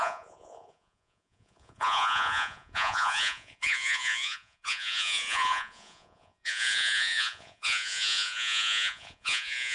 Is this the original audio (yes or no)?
no